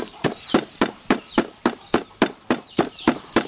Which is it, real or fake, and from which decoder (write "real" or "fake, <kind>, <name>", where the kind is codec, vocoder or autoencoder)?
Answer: fake, vocoder, BigVGAN v2